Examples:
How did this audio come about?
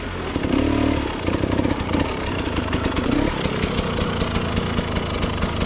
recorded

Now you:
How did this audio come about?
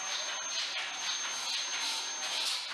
recorded